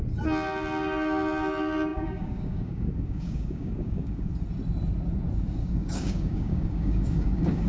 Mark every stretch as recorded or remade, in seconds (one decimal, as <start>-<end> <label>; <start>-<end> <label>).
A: 0.0-1.9 recorded; 1.9-4.3 remade; 4.3-5.6 recorded; 5.6-7.7 remade